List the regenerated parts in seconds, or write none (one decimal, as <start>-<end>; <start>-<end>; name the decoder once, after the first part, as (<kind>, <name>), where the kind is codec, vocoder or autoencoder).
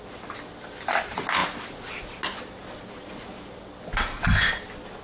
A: none